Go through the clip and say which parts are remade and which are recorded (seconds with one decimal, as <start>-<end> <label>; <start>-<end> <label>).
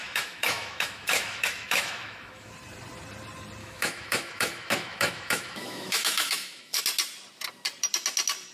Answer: 0.0-2.5 remade; 2.5-3.6 recorded; 3.6-6.8 remade; 6.8-8.5 recorded